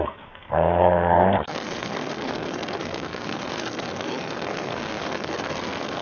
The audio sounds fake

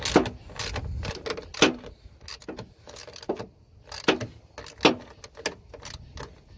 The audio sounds real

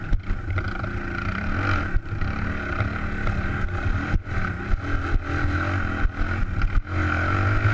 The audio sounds real